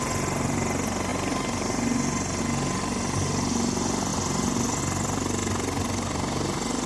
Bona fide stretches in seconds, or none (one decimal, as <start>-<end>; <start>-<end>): 0.0-6.9